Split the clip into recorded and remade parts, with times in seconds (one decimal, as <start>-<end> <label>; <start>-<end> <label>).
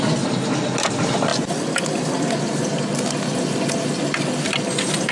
0.0-1.3 remade; 1.3-4.4 recorded; 4.4-5.1 remade